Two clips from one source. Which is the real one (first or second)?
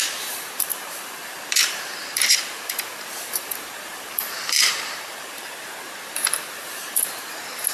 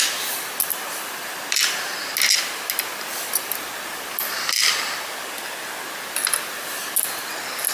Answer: second